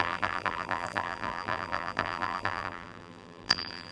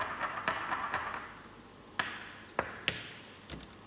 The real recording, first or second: second